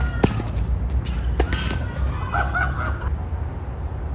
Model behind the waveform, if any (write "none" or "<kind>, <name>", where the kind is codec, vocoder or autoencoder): none